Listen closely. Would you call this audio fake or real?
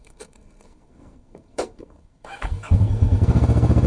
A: fake